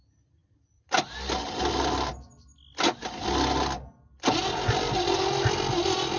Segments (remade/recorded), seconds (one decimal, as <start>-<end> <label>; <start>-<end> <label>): 0.0-6.2 recorded